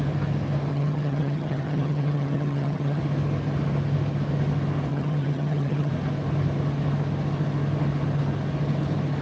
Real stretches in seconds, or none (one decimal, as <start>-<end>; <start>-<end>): 0.0-0.7; 3.0-4.9; 5.9-9.2